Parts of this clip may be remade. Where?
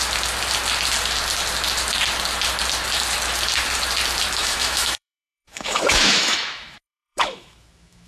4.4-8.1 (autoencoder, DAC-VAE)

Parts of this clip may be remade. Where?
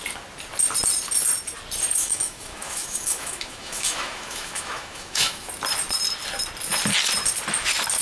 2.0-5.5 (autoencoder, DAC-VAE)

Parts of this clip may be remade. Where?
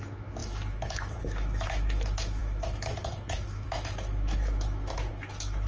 0.0-5.7 (autoencoder, DAC-VAE)